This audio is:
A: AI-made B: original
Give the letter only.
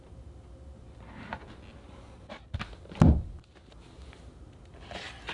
B